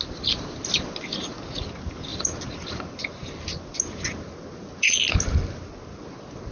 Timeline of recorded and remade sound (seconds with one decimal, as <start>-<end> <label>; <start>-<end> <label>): 0.0-6.5 recorded